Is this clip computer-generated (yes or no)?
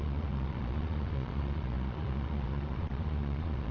yes